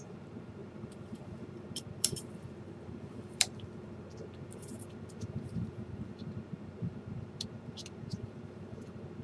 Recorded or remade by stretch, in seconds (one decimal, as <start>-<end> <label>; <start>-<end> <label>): 0.0-9.2 remade